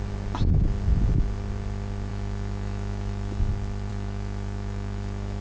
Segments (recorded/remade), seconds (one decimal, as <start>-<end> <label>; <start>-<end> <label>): 0.0-2.1 recorded; 2.1-3.5 remade; 3.5-3.9 recorded; 3.9-5.4 remade